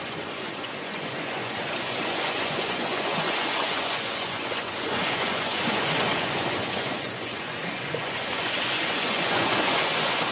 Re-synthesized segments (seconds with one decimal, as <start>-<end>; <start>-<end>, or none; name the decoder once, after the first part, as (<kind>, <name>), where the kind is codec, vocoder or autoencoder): 0.0-10.3 (vocoder, Vocos)